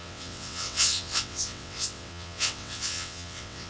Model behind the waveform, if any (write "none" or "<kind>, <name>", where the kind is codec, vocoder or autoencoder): vocoder, WaveNeXt